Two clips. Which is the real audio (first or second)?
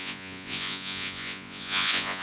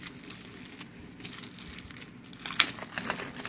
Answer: second